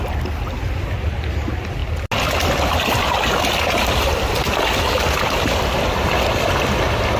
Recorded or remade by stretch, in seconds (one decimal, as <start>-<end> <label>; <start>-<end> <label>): 0.0-7.2 recorded